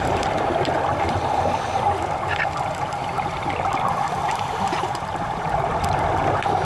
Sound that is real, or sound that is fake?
real